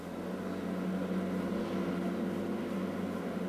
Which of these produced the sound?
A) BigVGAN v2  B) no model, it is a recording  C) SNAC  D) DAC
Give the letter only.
B